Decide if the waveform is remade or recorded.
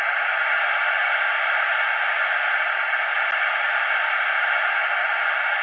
recorded